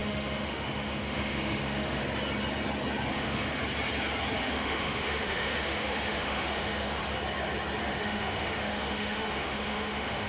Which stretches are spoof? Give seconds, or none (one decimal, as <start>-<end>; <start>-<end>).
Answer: 0.0-2.0; 3.1-3.6; 4.4-7.0; 7.8-10.3